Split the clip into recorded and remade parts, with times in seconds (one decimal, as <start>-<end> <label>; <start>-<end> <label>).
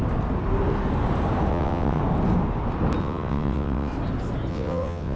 0.0-1.5 recorded; 1.5-2.0 remade; 2.0-3.0 recorded; 3.0-3.9 remade; 3.9-4.5 recorded; 4.5-5.2 remade